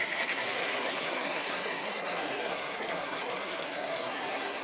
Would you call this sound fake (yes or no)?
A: yes